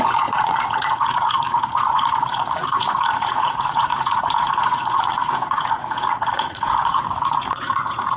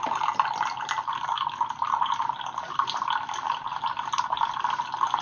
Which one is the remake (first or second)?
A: first